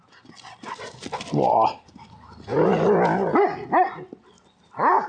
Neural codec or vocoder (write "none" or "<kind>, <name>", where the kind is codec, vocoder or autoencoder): none